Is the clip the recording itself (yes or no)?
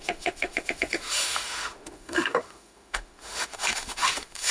no